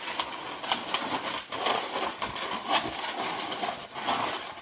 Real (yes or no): yes